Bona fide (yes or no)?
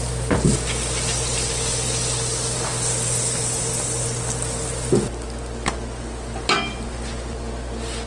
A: yes